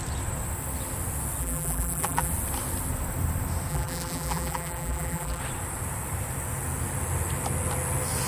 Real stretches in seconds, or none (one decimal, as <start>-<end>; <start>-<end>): 0.0-1.4; 2.3-3.7; 5.4-8.3

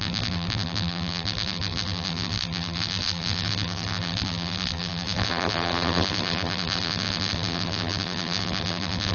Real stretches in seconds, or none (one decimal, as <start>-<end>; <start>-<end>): none